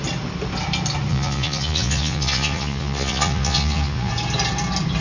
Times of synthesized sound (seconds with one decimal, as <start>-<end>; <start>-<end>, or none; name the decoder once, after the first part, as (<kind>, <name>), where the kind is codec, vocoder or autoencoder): 1.1-4.1 (vocoder, Vocos)